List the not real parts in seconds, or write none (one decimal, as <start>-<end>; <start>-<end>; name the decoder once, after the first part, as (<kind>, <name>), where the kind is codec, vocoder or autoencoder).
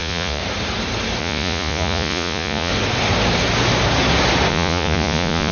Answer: 0.0-0.4 (vocoder, Vocos); 1.2-2.7; 4.5-5.5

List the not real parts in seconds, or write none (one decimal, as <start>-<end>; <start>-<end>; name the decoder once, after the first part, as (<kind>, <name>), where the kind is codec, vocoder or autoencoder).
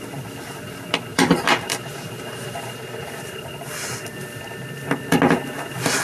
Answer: 1.1-3.5 (vocoder, BigVGAN v2)